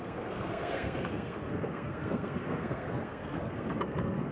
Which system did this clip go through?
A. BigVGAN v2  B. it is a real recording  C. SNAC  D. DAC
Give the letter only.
C